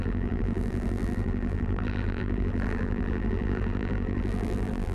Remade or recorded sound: remade